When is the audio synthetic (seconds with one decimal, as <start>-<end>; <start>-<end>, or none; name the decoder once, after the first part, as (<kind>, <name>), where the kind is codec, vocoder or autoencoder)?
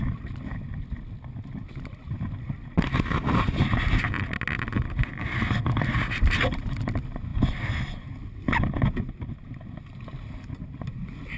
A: none